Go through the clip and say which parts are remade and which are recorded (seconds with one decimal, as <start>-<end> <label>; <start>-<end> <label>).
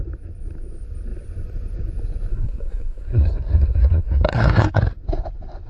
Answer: 0.0-2.3 recorded; 2.3-4.8 remade; 4.8-5.7 recorded